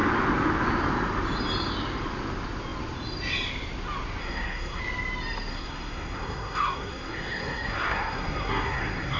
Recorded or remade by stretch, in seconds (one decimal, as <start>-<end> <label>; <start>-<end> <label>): 0.0-4.2 recorded; 4.2-4.8 remade; 4.8-5.5 recorded; 5.5-9.2 remade

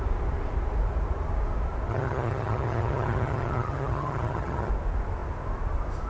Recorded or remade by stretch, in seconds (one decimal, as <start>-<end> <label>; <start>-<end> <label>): 0.0-1.9 recorded; 1.9-4.7 remade; 4.7-6.1 recorded

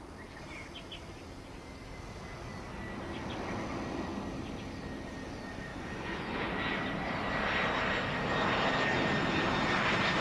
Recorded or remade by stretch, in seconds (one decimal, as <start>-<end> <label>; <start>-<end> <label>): 0.0-5.7 recorded; 5.7-6.4 remade; 6.4-10.2 recorded

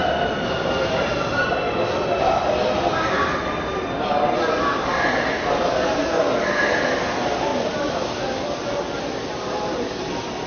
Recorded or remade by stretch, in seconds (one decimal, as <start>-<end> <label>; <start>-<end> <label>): 0.0-10.5 recorded

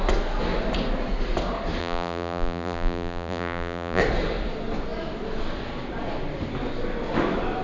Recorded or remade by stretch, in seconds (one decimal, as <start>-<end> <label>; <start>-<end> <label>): 0.0-1.8 recorded; 1.8-4.0 remade; 4.0-7.6 recorded